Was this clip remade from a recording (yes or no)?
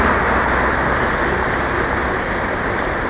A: no